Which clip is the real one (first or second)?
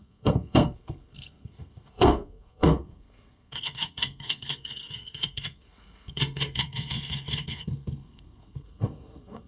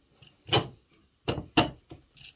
second